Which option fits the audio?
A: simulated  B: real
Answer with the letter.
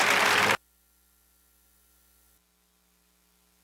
B